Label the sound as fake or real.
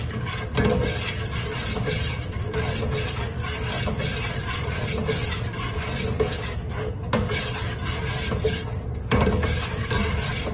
real